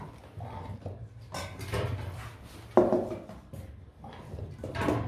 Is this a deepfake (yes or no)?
no